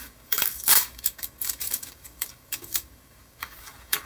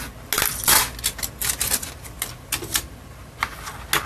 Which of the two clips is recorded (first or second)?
second